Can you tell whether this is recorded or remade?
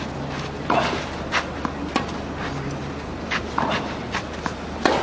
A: recorded